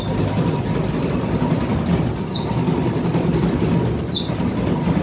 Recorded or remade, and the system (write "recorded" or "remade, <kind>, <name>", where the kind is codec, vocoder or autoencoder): recorded